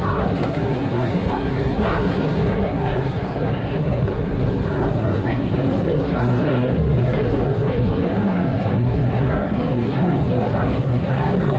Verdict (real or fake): fake